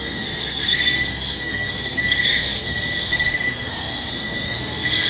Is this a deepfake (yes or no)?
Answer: yes